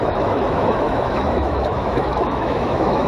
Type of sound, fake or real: fake